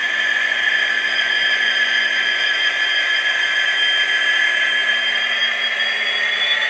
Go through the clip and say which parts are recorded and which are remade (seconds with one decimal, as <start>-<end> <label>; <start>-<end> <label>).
0.0-3.6 remade; 3.6-6.7 recorded